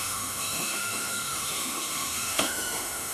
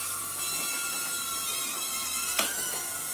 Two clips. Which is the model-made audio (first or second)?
first